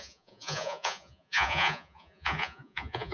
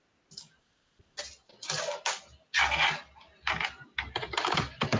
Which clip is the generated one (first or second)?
first